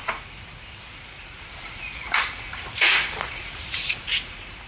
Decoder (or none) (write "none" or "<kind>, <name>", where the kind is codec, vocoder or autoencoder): vocoder, Vocos